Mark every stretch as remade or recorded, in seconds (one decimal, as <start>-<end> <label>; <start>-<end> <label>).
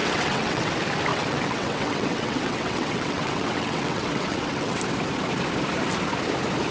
0.0-0.7 remade; 0.7-1.1 recorded; 1.1-4.8 remade; 4.8-6.7 recorded